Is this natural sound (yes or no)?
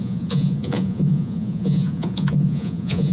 no